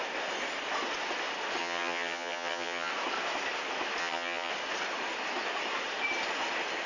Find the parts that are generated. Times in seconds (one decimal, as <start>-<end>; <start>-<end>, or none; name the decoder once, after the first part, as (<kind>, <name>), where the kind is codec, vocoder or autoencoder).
1.6-2.9 (vocoder, HiFi-GAN); 4.0-4.5